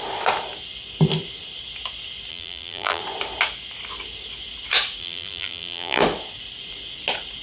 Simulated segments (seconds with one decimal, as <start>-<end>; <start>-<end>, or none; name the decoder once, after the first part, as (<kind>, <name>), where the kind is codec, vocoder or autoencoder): 2.3-3.0 (vocoder, BigVGAN v2); 5.0-6.0